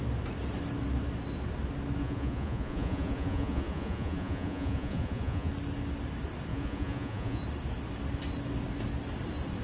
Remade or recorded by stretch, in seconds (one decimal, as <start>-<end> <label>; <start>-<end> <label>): 0.0-2.0 recorded; 2.0-5.5 remade; 5.5-6.5 recorded; 6.5-7.4 remade; 7.4-9.6 recorded